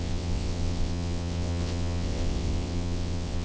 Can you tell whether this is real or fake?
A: fake